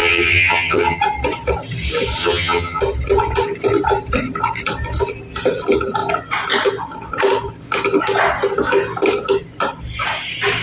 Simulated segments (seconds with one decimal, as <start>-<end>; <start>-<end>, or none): 0.0-1.0; 2.2-2.8